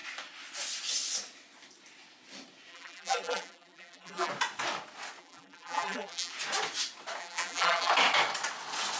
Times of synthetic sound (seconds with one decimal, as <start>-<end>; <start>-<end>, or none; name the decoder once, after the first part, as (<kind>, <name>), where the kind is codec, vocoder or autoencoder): 2.7-4.3 (vocoder, BigVGAN v2); 5.2-6.3; 7.2-7.9

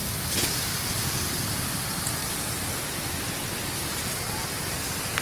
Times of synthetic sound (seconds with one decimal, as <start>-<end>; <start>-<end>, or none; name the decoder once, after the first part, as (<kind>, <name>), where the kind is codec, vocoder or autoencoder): none

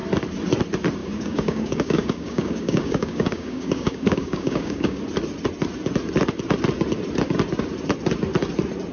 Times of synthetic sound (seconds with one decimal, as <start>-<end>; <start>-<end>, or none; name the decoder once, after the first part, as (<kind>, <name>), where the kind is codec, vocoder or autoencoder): 1.0-5.0 (codec, DAC)

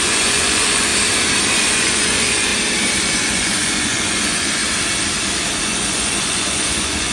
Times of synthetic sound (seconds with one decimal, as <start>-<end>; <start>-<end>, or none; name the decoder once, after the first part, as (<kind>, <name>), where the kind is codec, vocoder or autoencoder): 0.0-0.9 (vocoder, Vocos); 1.5-2.5; 3.0-4.6; 5.6-7.1

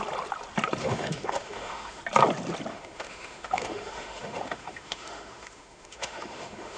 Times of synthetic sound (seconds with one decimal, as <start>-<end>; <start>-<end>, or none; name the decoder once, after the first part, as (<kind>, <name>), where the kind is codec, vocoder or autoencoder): 0.8-2.0 (autoencoder, DAC-VAE); 2.7-6.8

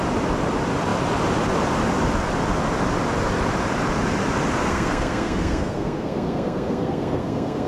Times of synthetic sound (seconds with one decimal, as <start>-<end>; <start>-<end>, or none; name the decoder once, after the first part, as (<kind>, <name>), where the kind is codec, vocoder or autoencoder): 4.6-7.7 (codec, SNAC)